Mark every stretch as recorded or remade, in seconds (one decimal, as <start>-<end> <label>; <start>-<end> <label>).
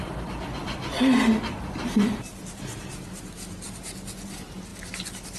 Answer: 0.0-4.7 recorded; 4.7-5.4 remade